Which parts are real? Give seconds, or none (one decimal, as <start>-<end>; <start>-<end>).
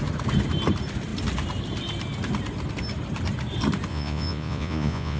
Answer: 0.0-3.9